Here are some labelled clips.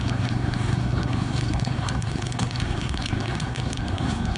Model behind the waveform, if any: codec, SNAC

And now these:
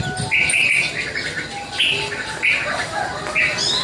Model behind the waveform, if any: none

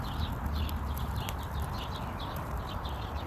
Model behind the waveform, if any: none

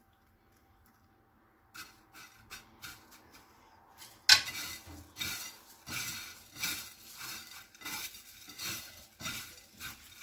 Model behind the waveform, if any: none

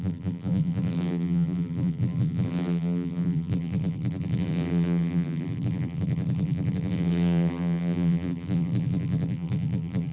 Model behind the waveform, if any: vocoder, BigVGAN v2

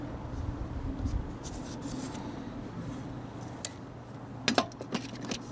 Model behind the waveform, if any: none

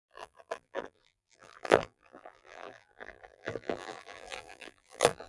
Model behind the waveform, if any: vocoder, BigVGAN v2